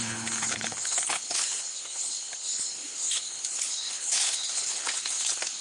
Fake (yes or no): yes